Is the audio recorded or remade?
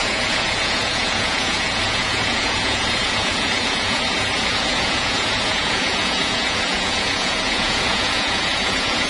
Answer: remade